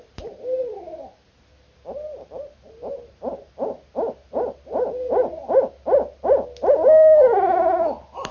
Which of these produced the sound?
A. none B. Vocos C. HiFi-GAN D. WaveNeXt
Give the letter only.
A